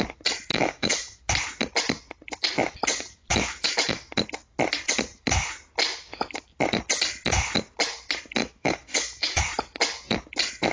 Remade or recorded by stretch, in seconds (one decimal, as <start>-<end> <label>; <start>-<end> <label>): 0.0-0.5 recorded; 0.5-1.2 remade; 1.2-3.3 recorded; 3.3-4.1 remade; 4.1-8.4 recorded; 8.4-9.4 remade; 9.4-10.7 recorded